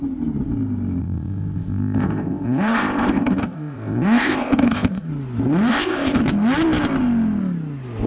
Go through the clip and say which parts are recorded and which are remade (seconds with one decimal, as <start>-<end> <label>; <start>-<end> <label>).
0.0-1.0 recorded; 1.0-5.1 remade; 5.1-5.7 recorded; 5.7-6.2 remade; 6.2-8.1 recorded